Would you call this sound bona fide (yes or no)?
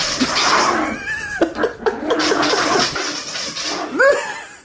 yes